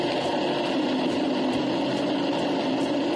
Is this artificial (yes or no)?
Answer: no